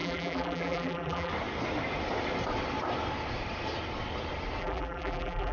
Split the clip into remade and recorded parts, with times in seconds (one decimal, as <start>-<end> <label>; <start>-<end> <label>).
0.0-1.3 remade; 1.3-4.6 recorded; 4.6-5.5 remade